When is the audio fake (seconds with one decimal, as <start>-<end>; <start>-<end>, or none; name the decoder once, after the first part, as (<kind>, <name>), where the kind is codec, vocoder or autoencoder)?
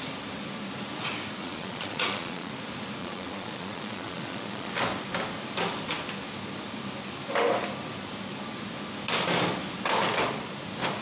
1.4-2.5 (vocoder, Vocos); 3.0-4.7